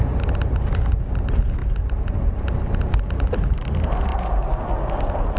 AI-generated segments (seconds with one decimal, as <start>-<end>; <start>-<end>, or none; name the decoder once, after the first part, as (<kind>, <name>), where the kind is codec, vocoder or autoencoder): none